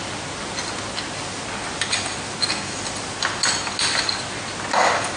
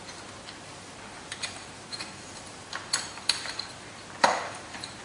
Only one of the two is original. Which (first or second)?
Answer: first